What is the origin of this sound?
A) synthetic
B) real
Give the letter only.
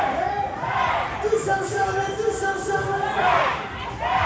B